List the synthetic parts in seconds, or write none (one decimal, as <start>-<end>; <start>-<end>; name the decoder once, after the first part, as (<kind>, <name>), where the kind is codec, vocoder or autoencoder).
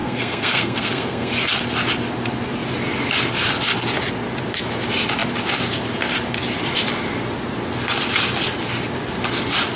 0.0-1.3 (codec, SNAC)